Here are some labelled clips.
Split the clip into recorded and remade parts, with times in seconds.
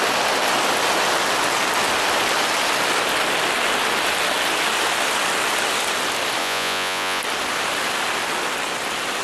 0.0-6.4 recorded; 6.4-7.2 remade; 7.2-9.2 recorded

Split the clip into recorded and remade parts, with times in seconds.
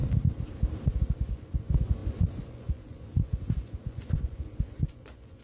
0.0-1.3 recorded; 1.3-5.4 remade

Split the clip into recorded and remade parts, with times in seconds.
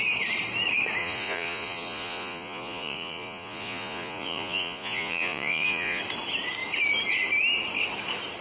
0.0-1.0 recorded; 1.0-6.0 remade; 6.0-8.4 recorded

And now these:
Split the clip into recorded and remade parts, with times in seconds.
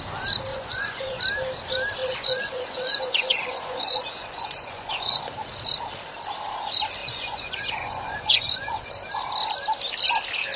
0.0-0.5 recorded; 0.5-1.2 remade; 1.2-2.0 recorded; 2.0-5.2 remade; 5.2-7.0 recorded; 7.0-8.9 remade; 8.9-10.6 recorded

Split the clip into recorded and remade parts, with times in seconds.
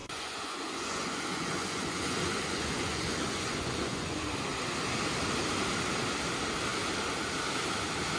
0.0-4.3 remade; 4.3-8.2 recorded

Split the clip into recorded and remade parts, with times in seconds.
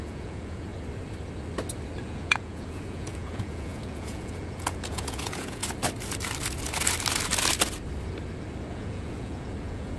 0.0-0.7 remade; 0.7-2.0 recorded; 2.0-5.6 remade; 5.6-8.7 recorded; 8.7-10.0 remade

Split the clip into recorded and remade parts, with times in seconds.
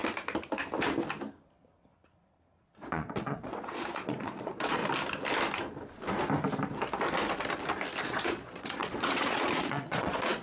0.0-2.7 recorded; 2.7-4.8 remade; 4.8-8.0 recorded; 8.0-10.4 remade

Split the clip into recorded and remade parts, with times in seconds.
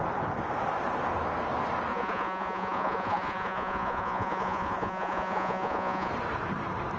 0.0-1.9 recorded; 1.9-6.1 remade; 6.1-7.0 recorded